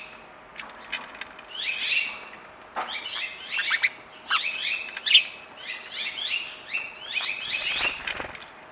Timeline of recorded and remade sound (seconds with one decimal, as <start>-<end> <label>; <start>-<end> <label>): 0.0-8.7 recorded